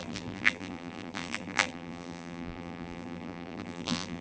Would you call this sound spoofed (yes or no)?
yes